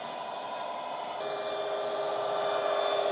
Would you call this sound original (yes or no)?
yes